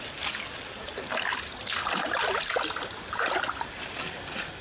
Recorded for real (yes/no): yes